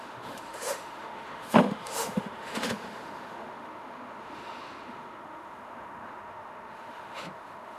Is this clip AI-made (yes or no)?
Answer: yes